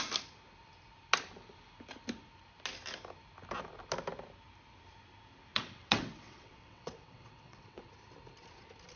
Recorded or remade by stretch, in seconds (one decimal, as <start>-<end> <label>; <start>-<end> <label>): 0.0-5.5 recorded; 5.5-7.9 remade; 7.9-9.0 recorded